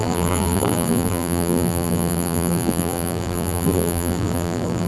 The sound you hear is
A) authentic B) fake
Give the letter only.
B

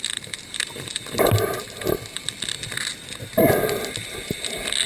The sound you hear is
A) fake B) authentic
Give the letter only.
B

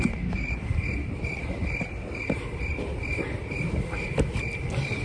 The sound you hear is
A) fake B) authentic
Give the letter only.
A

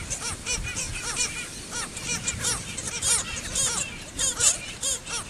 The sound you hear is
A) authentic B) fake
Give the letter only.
B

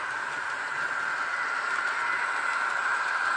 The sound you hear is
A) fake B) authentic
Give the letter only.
A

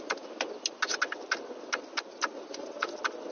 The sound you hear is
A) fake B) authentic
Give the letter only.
B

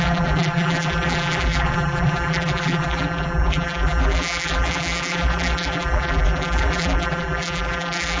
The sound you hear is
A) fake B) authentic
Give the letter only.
A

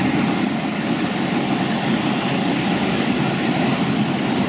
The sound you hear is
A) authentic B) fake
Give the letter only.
A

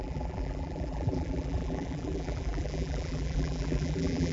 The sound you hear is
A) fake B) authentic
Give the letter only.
A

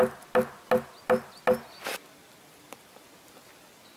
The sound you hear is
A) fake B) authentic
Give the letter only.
B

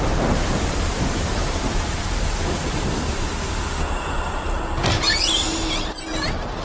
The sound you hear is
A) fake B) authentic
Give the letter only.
A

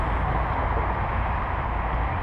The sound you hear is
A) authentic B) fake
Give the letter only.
A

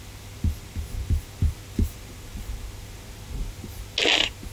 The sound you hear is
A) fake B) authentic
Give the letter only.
B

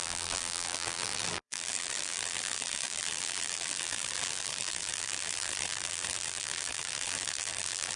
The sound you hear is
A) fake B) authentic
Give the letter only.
A